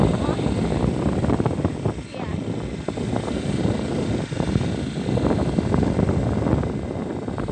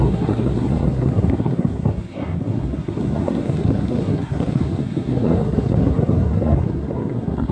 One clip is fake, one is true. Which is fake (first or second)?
second